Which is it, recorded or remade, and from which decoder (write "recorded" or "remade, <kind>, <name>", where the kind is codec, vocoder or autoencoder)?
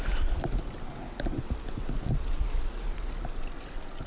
recorded